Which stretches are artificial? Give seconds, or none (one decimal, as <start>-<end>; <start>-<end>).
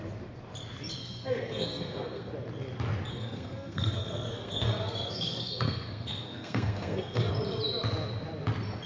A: 1.0-2.3; 3.1-7.3